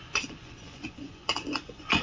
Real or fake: fake